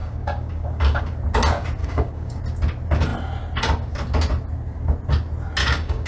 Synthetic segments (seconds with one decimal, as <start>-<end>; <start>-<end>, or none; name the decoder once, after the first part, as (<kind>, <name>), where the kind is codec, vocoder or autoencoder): 0.0-1.0 (codec, DAC); 1.8-2.4; 5.6-6.1